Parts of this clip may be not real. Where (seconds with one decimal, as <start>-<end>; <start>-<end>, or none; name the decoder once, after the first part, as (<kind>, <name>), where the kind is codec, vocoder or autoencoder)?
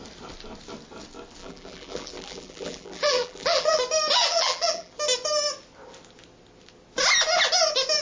1.4-3.8 (vocoder, BigVGAN v2); 4.3-4.9